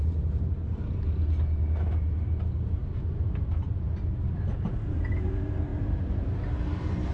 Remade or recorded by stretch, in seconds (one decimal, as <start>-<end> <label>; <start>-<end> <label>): 0.0-0.6 remade; 0.6-4.9 recorded; 4.9-7.1 remade